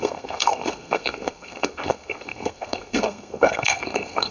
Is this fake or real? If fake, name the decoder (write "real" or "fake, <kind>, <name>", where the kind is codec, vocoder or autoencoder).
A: fake, codec, SNAC